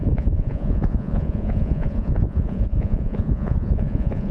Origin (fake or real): fake